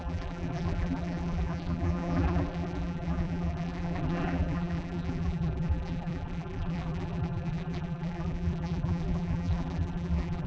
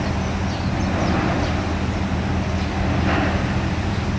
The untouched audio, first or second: second